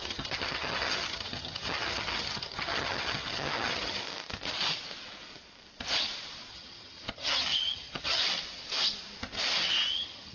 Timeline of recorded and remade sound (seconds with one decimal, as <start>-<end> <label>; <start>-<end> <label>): 0.0-4.0 remade; 4.0-6.5 recorded; 6.5-8.2 remade; 8.2-9.9 recorded; 9.9-10.3 remade